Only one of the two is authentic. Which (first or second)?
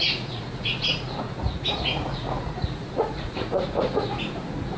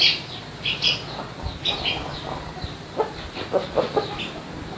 second